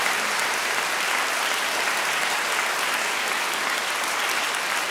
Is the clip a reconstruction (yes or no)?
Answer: no